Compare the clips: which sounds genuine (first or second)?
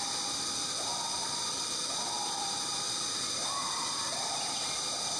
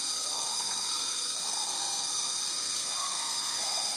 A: first